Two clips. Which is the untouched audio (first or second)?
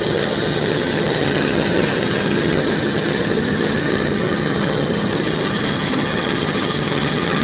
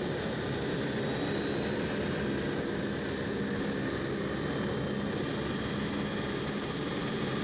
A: second